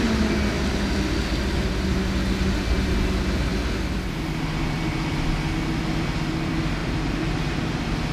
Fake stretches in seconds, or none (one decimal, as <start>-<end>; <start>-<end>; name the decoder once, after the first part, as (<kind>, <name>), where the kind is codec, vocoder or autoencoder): 6.8-7.6 (vocoder, BigVGAN v2)